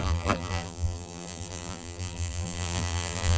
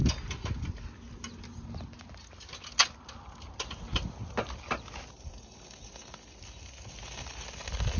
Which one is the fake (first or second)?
first